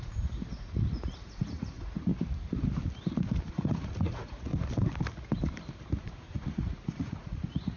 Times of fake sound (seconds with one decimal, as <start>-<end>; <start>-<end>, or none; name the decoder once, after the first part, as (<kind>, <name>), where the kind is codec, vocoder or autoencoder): 0.0-2.1 (vocoder, Vocos); 3.5-4.5; 6.0-7.8